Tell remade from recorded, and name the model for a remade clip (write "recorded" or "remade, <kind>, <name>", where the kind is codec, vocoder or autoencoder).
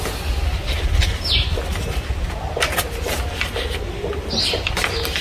recorded